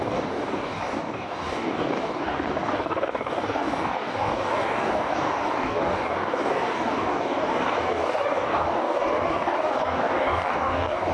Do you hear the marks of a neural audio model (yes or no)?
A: yes